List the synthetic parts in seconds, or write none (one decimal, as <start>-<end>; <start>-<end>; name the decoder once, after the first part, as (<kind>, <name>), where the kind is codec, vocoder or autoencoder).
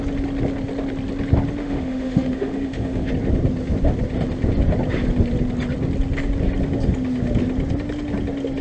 1.6-3.1 (autoencoder, DAC-VAE)